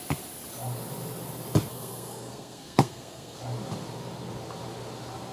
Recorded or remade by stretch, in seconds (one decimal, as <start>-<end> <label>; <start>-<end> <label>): 0.0-1.7 recorded; 1.7-3.4 remade; 3.4-5.3 recorded